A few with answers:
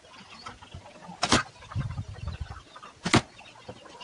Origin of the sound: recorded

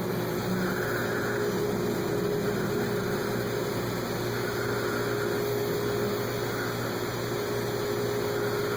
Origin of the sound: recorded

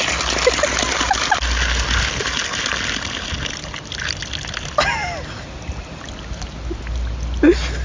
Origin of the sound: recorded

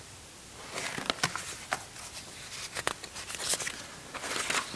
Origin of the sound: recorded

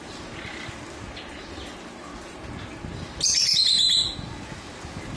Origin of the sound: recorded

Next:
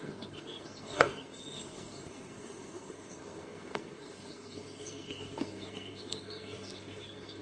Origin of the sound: remade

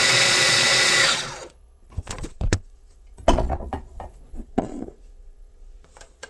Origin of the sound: remade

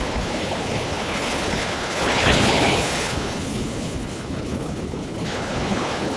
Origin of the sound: remade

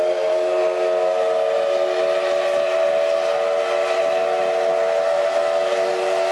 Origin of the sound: recorded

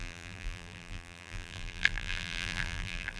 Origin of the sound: remade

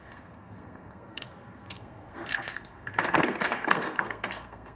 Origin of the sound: remade